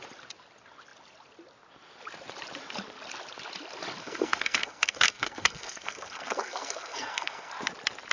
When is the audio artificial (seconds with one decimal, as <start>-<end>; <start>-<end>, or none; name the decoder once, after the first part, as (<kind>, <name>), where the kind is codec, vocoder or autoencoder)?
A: 4.0-7.5 (codec, SNAC)